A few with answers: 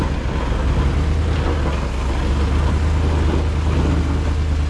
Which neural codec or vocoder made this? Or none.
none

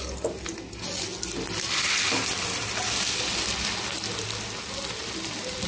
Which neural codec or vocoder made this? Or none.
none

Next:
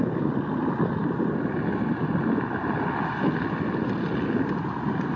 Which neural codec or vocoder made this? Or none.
none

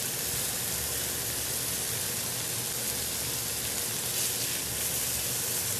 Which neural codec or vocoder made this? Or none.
none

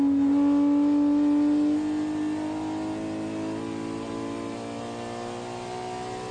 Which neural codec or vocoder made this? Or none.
none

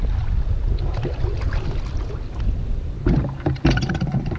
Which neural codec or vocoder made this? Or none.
none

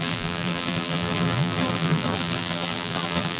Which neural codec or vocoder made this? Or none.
vocoder, BigVGAN v2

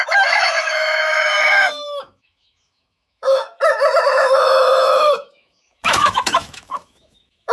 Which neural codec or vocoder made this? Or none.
autoencoder, DAC-VAE